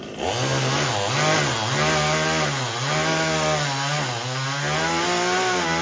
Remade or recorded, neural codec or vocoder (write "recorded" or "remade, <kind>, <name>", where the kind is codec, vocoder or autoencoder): recorded